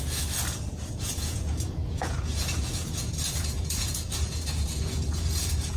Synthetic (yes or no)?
yes